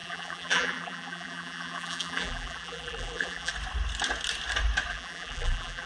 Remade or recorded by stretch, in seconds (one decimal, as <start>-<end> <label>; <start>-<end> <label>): 0.0-3.5 remade; 3.5-4.9 recorded; 4.9-5.9 remade